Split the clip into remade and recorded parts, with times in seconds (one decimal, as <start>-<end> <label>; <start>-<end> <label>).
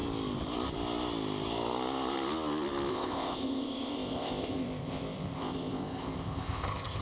0.0-2.9 recorded; 2.9-7.0 remade